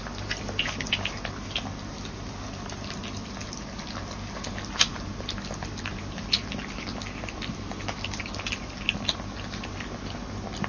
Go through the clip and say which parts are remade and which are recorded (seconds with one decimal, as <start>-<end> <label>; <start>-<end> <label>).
0.0-10.7 recorded